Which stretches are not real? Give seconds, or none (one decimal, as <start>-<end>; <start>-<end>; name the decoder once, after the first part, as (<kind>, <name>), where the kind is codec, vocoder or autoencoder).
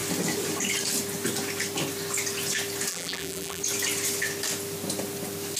2.9-3.6 (vocoder, BigVGAN v2)